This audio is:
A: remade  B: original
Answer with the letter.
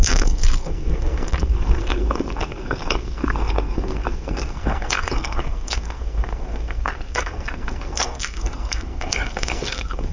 A